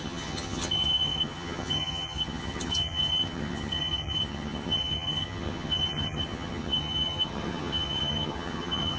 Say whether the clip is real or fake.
fake